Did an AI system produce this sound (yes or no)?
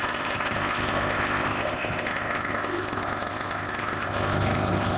yes